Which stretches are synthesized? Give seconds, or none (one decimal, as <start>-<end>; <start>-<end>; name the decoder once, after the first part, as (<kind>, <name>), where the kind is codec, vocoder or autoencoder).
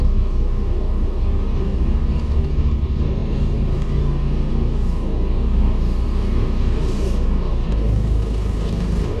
0.0-9.2 (codec, DAC)